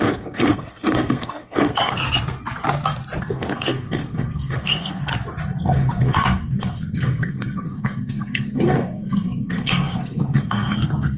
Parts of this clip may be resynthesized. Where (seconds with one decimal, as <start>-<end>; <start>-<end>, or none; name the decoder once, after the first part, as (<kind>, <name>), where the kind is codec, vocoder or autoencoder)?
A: 0.0-2.0 (codec, SNAC); 3.2-5.1; 5.6-11.2